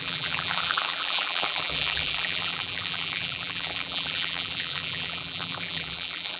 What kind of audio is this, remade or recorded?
remade